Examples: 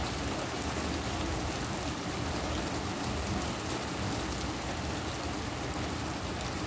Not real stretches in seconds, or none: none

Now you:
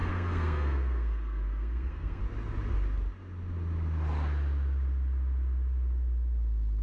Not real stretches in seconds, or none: 0.0-2.2 (codec, SNAC)

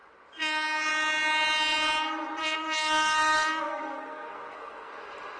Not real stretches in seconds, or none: 2.4-4.9 (codec, SNAC)

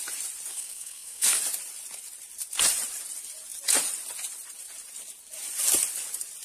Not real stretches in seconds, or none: 0.5-1.4 (codec, SNAC)